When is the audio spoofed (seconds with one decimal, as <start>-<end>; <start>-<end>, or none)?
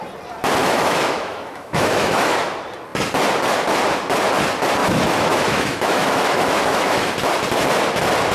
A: 0.6-2.5; 4.8-7.1